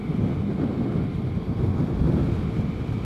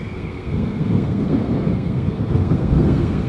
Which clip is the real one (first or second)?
first